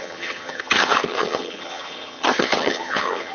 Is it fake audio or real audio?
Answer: fake